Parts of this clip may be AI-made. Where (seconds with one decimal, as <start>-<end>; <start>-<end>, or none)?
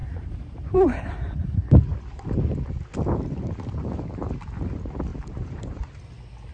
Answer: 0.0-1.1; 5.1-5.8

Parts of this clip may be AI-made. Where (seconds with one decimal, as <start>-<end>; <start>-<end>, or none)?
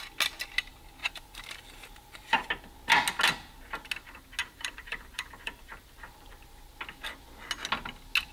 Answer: 1.0-2.5; 4.4-6.7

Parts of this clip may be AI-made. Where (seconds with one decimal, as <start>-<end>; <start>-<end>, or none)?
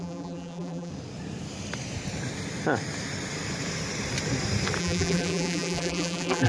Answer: 0.0-0.9; 4.8-6.5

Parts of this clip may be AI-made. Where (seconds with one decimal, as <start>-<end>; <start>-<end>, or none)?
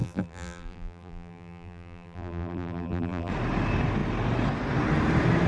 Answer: 0.0-3.3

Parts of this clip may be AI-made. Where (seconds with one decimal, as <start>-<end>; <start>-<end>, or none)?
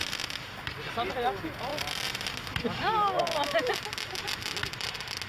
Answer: 0.0-0.8; 1.7-4.2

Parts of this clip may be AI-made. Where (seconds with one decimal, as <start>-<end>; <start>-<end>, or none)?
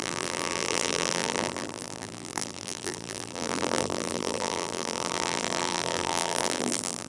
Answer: 0.0-7.1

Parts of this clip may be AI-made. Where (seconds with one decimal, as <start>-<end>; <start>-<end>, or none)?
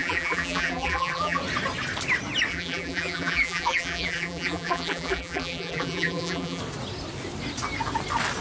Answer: 0.0-1.4; 2.5-6.6